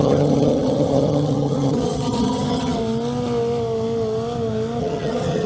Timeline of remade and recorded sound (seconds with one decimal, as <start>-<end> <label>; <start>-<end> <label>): 0.0-2.8 remade; 2.8-4.8 recorded; 4.8-5.5 remade